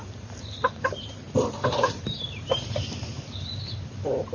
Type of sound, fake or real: fake